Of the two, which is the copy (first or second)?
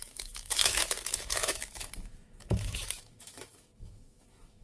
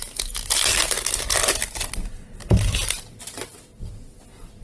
first